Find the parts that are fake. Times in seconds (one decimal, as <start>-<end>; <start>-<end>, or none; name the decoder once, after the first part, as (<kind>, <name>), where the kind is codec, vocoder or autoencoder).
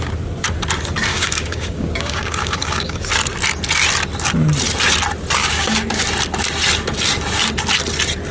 1.1-3.1 (codec, DAC); 5.4-6.0